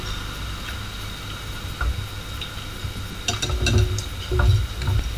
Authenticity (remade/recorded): recorded